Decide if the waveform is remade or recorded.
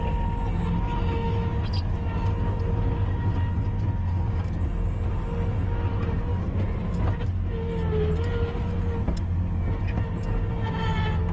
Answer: recorded